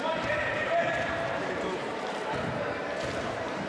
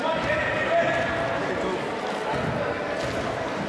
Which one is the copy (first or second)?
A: first